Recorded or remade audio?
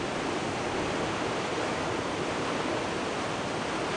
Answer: recorded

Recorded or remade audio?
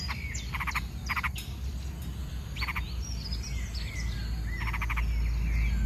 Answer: recorded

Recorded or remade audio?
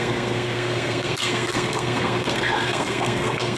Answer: remade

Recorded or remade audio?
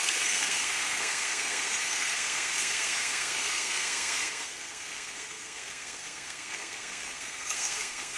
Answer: remade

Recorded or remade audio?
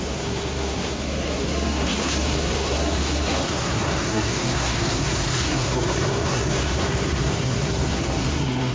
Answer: remade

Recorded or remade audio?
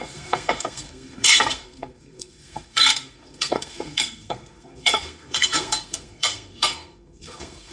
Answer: remade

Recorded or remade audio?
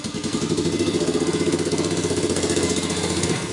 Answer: remade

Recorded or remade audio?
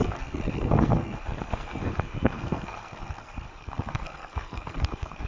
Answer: remade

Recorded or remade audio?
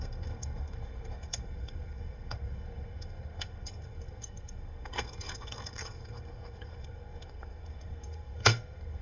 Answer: remade